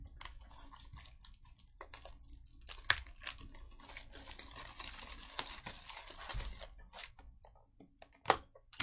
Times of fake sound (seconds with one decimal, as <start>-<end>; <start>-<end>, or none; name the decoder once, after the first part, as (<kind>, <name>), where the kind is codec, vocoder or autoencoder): none